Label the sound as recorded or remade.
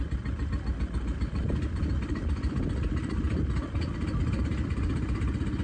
recorded